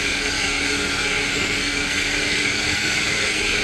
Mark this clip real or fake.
fake